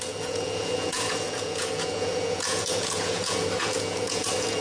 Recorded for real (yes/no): no